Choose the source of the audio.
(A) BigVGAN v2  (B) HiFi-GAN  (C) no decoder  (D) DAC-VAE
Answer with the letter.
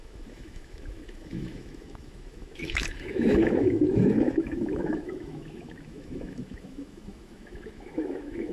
D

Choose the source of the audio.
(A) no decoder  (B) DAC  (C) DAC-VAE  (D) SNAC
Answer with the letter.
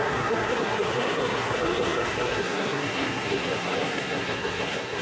D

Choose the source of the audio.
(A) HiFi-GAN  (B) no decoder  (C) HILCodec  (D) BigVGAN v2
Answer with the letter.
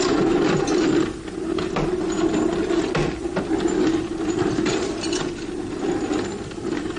B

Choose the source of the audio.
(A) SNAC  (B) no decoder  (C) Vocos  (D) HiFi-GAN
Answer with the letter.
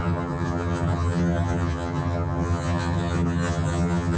D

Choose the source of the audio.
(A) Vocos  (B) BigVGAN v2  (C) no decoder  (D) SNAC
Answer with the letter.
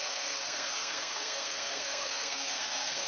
D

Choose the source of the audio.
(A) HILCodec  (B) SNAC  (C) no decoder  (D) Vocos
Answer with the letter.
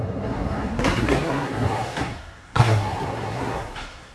B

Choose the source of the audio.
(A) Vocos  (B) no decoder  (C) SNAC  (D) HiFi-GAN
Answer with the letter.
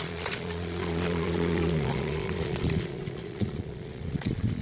A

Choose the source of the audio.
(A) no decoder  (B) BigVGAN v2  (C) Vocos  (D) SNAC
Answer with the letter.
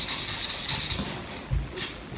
A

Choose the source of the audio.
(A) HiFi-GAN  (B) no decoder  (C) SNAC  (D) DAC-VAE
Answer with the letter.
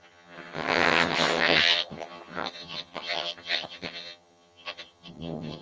A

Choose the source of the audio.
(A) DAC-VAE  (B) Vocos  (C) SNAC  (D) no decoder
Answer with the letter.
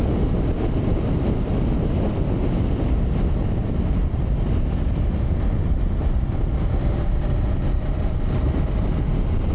D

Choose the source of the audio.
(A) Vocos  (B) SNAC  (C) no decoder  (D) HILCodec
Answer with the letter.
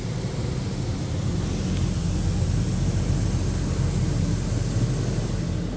C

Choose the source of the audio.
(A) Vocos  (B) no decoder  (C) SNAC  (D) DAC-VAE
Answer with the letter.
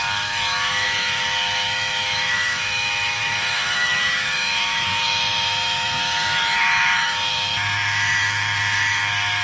D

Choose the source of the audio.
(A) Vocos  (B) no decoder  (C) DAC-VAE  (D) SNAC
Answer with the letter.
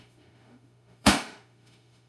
C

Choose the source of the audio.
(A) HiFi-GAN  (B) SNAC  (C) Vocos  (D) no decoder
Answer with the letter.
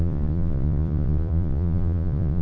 C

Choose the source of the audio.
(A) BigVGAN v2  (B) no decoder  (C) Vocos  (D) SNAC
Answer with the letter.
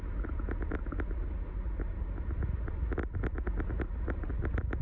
B